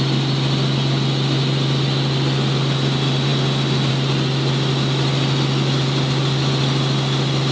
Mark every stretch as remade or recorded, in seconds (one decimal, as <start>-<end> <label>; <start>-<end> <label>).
0.0-7.5 recorded